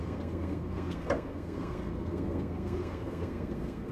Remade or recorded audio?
remade